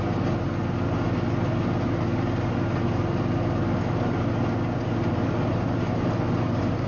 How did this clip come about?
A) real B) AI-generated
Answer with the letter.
A